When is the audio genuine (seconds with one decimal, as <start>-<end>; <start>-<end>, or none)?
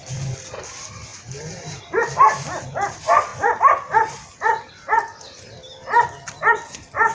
0.0-1.1; 1.8-7.1